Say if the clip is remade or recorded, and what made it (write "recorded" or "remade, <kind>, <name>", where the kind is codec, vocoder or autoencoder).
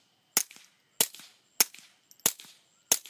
recorded